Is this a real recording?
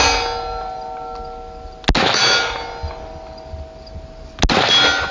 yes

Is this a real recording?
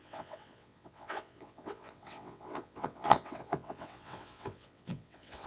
no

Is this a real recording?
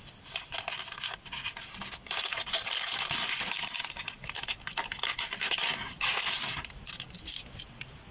yes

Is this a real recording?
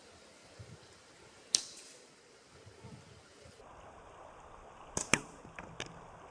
yes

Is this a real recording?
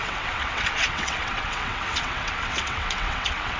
no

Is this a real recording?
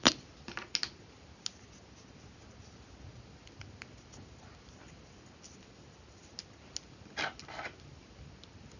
yes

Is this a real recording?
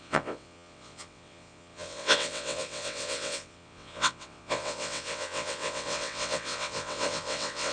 no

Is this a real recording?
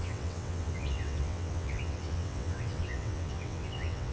no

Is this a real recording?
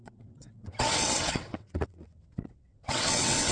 no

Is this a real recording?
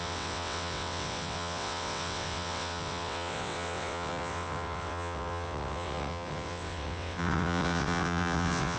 no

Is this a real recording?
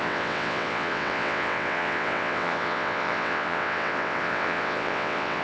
no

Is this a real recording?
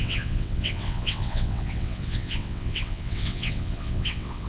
no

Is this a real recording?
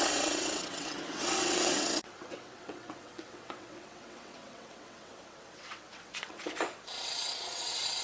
no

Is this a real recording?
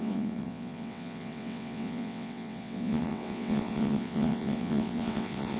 no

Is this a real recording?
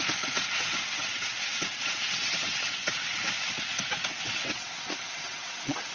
no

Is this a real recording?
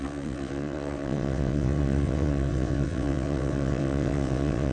no